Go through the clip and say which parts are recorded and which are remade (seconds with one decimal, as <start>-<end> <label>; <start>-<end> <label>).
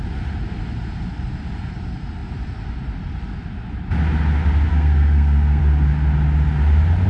0.0-4.7 recorded; 4.7-5.6 remade; 5.6-7.1 recorded